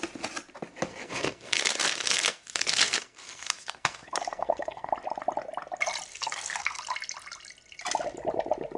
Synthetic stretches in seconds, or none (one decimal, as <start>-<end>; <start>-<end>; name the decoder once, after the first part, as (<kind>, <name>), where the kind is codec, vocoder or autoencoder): 0.9-4.9 (codec, SNAC); 6.1-6.8